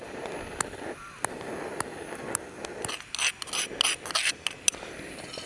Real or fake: real